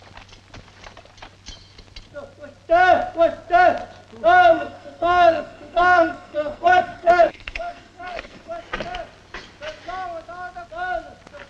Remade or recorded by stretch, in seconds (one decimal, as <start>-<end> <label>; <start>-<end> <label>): 0.0-4.5 recorded; 4.5-8.5 remade; 8.5-11.5 recorded